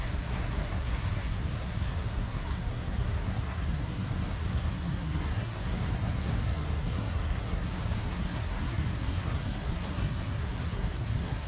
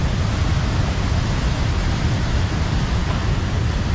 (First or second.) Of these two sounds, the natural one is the second